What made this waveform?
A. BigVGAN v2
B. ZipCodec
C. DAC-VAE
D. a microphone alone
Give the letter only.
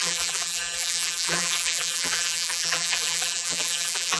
A